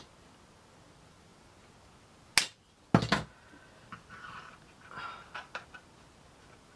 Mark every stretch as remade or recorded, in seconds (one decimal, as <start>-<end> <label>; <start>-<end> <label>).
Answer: 0.0-6.8 recorded